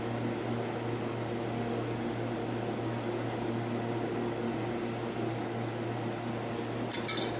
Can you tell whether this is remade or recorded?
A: recorded